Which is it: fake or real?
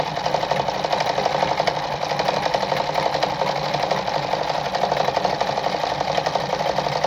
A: real